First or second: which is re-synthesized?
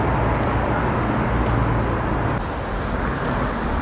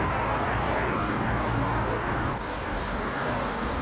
second